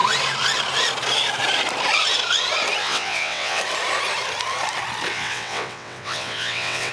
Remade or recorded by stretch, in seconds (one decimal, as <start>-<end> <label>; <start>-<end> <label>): 0.0-2.8 recorded; 2.8-3.6 remade; 3.6-5.1 recorded; 5.1-6.9 remade